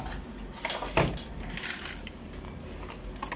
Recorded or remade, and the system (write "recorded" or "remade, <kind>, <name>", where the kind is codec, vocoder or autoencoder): recorded